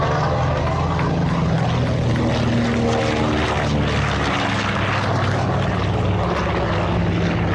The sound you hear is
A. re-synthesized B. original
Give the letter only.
B